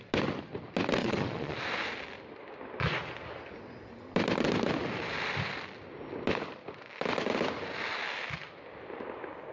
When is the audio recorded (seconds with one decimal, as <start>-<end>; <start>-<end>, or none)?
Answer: 0.0-1.0; 1.6-9.5